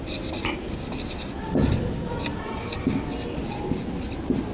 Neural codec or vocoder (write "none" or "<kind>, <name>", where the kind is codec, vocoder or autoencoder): none